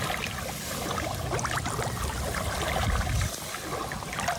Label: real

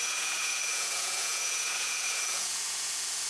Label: fake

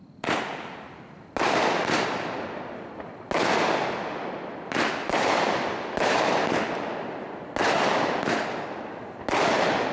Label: real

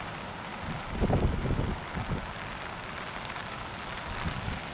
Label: real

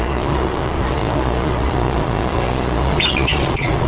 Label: fake